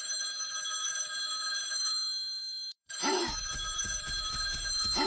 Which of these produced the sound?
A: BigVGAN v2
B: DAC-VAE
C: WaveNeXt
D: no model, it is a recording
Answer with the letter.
B